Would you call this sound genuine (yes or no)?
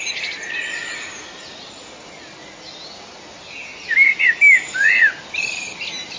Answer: yes